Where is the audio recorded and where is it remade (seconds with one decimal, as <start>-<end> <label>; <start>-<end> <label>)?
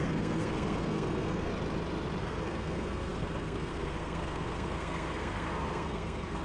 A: 0.0-1.5 remade; 1.5-2.2 recorded; 2.2-6.4 remade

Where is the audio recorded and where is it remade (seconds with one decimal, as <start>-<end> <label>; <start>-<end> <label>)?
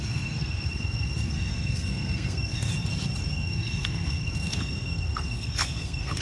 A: 0.0-2.7 remade; 2.7-3.3 recorded; 3.3-6.2 remade